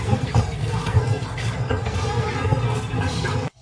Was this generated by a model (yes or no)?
yes